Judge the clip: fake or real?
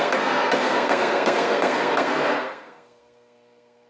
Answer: fake